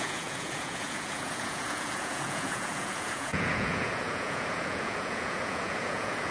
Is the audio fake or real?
fake